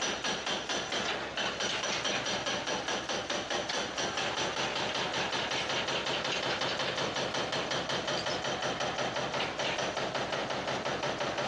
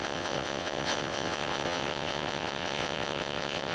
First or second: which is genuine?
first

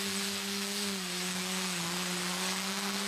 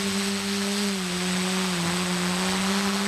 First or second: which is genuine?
second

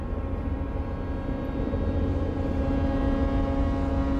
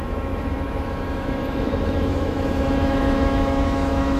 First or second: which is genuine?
first